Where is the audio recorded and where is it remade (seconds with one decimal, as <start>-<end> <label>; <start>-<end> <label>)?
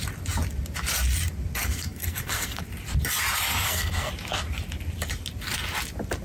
0.0-1.6 recorded; 1.6-2.6 remade; 2.6-3.5 recorded; 3.5-4.1 remade; 4.1-6.2 recorded